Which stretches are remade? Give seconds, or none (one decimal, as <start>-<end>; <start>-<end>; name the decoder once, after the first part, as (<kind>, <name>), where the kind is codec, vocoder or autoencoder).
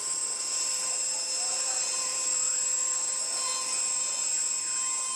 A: 0.0-0.9 (vocoder, Vocos); 1.5-4.6